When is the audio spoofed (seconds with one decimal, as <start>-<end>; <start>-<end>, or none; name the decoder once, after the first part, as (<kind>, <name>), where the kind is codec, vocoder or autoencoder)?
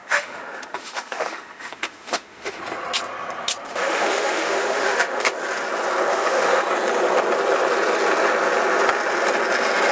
0.0-2.6 (autoencoder, DAC-VAE); 3.6-5.3; 6.1-6.6